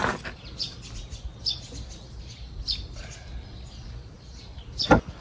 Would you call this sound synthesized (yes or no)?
no